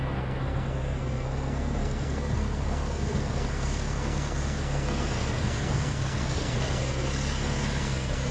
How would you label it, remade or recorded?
remade